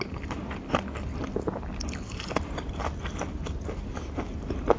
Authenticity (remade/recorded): recorded